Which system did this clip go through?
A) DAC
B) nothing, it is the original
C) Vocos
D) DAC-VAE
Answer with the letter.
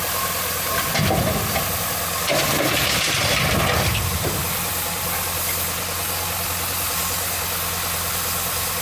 B